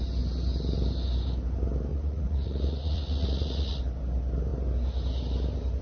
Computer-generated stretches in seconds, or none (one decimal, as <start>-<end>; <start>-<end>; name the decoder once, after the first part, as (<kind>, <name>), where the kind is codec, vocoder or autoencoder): 1.9-3.8 (vocoder, Vocos)